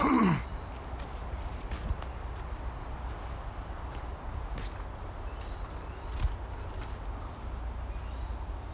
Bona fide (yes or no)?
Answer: yes